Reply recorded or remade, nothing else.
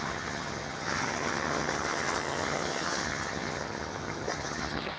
remade